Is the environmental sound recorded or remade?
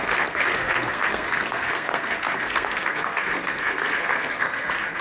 remade